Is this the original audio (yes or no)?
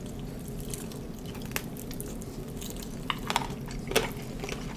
yes